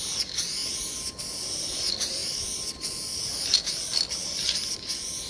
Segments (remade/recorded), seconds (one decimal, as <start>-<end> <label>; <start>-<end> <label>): 0.0-0.6 remade; 0.6-1.2 recorded; 1.2-5.3 remade